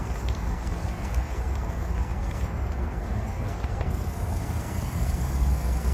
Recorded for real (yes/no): no